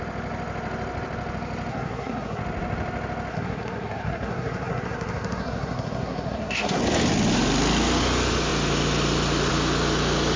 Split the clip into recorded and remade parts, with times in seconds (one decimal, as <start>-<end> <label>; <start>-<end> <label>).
0.0-1.7 recorded; 1.7-2.4 remade; 2.4-3.3 recorded; 3.3-6.8 remade; 6.8-10.4 recorded